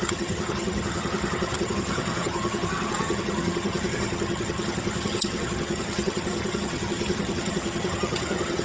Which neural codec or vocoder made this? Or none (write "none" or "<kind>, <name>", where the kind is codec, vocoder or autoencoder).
vocoder, HiFi-GAN